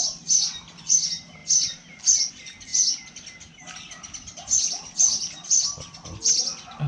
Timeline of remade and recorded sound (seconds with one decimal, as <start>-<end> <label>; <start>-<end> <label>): 0.0-6.9 recorded

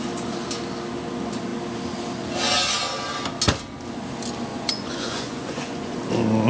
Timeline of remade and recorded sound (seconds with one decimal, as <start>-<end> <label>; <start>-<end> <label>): 0.0-4.5 recorded; 4.5-6.0 remade; 6.0-6.5 recorded